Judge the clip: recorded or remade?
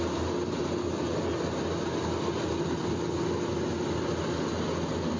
recorded